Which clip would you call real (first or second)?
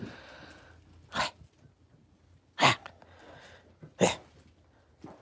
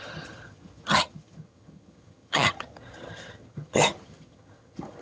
first